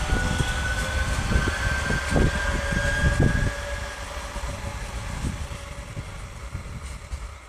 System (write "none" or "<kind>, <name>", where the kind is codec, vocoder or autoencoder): none